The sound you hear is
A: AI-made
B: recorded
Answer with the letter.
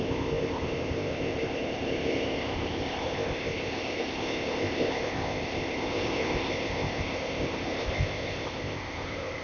A